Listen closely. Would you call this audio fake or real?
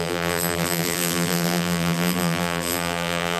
fake